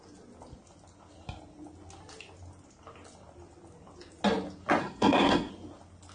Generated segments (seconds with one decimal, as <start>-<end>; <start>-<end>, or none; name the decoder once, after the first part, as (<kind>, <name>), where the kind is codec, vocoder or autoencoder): 4.8-5.5 (codec, SNAC)

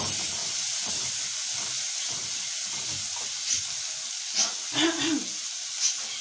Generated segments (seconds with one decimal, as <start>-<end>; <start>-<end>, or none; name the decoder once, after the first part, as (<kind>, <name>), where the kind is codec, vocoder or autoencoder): none

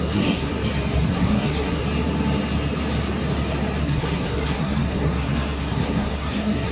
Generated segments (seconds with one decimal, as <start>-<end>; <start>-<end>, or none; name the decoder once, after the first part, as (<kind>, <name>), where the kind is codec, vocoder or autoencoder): 0.0-0.5 (codec, SNAC); 1.1-1.8; 3.8-6.7

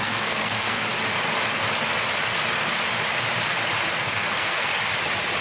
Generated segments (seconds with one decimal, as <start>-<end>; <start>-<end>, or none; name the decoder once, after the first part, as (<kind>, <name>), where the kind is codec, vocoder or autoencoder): 0.0-0.8 (codec, SNAC); 4.0-4.7

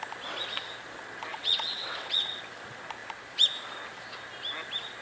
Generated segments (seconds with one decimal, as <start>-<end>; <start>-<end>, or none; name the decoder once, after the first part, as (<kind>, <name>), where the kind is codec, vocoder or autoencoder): 1.3-2.4 (vocoder, WaveNeXt)

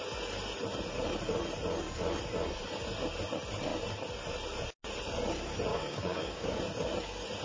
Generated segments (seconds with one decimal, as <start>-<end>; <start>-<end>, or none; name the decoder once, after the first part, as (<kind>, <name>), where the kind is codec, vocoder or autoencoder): 5.7-6.6 (codec, DAC)

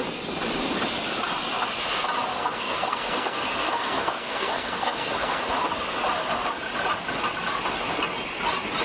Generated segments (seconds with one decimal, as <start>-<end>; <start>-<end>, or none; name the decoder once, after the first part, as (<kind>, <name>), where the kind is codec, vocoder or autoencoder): 2.3-5.4 (codec, SNAC)

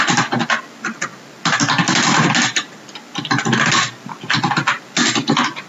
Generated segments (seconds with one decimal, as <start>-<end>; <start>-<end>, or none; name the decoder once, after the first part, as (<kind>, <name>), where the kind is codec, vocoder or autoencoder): none